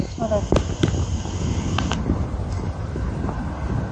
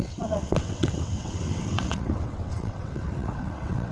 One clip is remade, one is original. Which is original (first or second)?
first